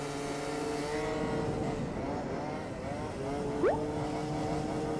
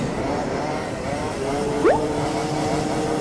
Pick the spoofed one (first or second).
second